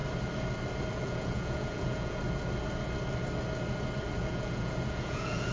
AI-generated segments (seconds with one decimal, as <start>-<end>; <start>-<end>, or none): 0.9-2.2; 4.2-5.5